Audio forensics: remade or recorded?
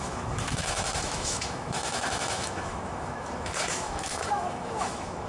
remade